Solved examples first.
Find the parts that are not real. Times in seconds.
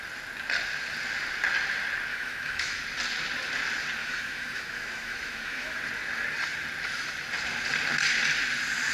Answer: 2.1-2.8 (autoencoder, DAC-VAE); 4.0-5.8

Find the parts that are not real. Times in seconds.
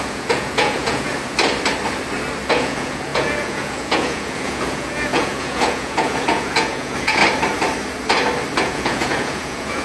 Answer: 0.0-1.1 (vocoder, Vocos); 2.5-7.2; 8.6-9.8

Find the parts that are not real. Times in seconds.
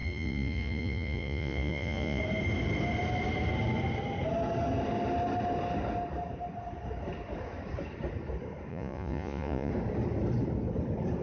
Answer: 0.0-2.2 (vocoder, Vocos); 8.7-9.7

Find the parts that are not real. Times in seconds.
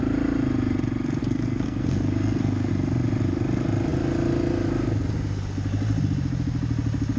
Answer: 1.2-2.7 (codec, SNAC)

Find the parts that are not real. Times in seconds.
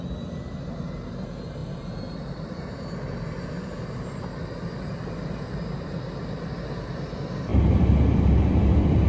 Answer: 1.6-5.3 (vocoder, BigVGAN v2)